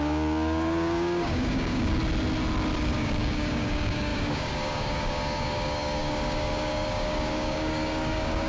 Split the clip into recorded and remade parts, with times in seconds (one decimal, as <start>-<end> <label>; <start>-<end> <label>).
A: 0.0-2.0 remade; 2.0-2.8 recorded; 2.8-8.5 remade